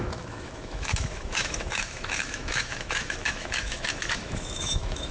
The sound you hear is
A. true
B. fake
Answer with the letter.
B